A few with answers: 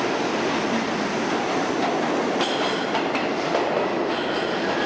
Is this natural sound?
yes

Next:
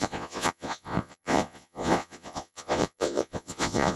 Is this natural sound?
no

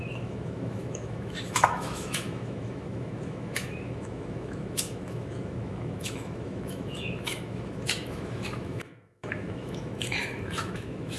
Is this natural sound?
no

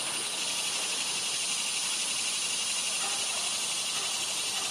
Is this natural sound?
yes